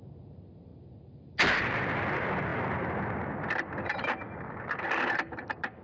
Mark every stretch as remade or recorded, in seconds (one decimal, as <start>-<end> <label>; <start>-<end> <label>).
0.0-5.8 recorded